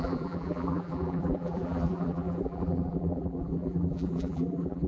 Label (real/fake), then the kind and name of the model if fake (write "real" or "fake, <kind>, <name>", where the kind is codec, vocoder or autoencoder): fake, vocoder, BigVGAN v2